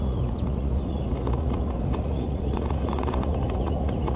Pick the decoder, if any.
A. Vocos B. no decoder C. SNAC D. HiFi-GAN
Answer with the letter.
A